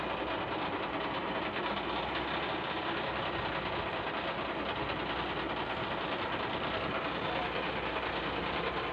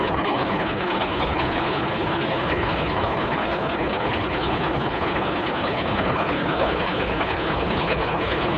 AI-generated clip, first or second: second